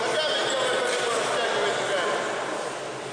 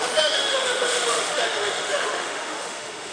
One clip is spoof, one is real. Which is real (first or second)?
first